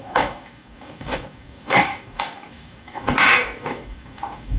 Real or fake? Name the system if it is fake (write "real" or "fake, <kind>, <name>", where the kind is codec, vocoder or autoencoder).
fake, codec, DAC